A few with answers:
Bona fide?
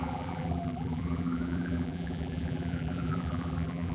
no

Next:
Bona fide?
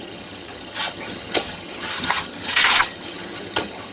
no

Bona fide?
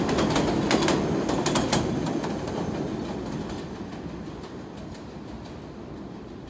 yes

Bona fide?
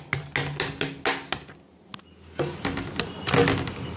yes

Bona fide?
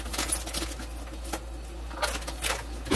yes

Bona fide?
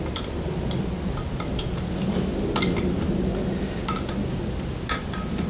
yes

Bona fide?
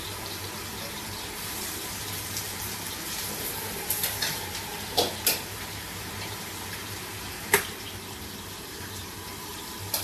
no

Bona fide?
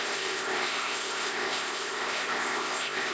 no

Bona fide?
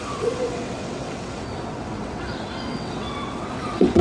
no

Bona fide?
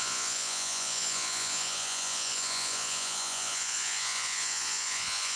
no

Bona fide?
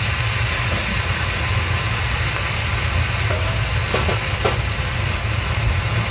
yes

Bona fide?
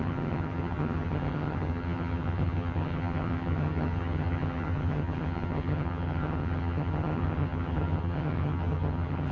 no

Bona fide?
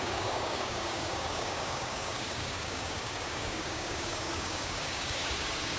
no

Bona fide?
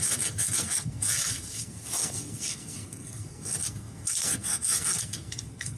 no